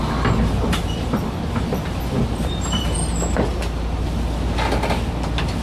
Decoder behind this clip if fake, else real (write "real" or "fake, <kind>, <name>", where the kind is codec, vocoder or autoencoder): real